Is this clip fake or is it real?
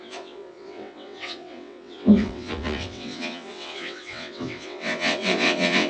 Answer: fake